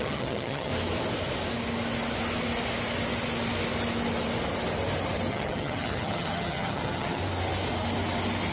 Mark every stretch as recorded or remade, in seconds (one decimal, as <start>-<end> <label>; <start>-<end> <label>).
0.0-0.7 remade; 0.7-5.3 recorded; 5.3-7.2 remade; 7.2-8.5 recorded